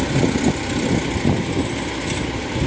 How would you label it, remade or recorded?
recorded